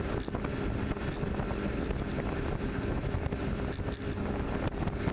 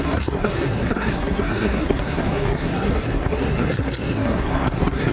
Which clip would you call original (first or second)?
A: first